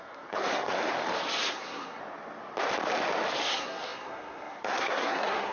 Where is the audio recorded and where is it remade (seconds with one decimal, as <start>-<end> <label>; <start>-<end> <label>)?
0.0-0.9 remade; 0.9-1.5 recorded; 1.5-2.0 remade; 2.0-3.4 recorded; 3.4-5.5 remade